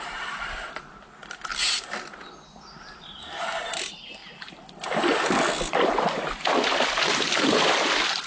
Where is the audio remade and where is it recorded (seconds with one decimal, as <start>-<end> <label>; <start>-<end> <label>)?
0.0-8.3 recorded